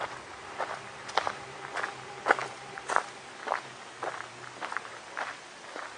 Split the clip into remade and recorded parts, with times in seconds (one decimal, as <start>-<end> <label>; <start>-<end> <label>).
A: 0.0-6.0 remade

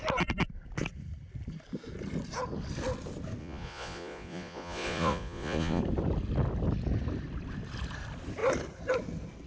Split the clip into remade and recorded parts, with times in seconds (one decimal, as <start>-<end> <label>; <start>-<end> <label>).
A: 0.0-3.4 recorded; 3.4-5.8 remade; 5.8-9.5 recorded

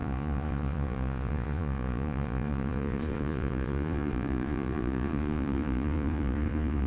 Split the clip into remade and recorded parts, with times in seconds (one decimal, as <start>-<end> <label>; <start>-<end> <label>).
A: 0.0-6.9 remade

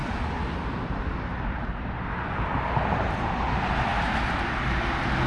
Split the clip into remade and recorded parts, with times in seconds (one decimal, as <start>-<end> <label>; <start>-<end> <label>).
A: 0.0-5.3 recorded

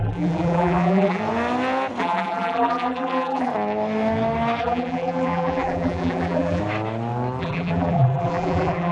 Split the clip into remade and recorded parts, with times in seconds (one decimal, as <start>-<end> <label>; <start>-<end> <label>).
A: 0.0-1.2 remade; 1.2-2.0 recorded; 2.0-3.5 remade; 3.5-4.6 recorded; 4.6-6.6 remade; 6.6-7.4 recorded; 7.4-8.9 remade

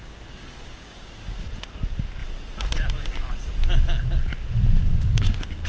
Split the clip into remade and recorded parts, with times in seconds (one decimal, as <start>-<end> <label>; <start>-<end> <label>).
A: 0.0-1.5 remade; 1.5-4.9 recorded; 4.9-5.7 remade